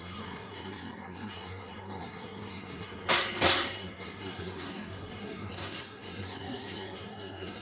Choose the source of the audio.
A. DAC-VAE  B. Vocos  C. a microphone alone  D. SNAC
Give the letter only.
D